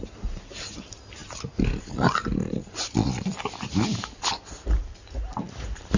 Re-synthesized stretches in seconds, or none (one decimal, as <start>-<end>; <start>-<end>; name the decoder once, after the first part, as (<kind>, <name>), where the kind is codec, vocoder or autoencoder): none